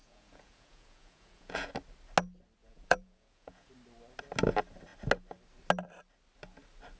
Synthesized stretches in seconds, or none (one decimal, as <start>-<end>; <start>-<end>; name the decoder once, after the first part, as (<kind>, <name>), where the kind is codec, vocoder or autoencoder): 0.0-1.7 (vocoder, Vocos); 2.6-3.7